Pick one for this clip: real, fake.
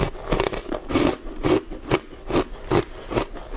real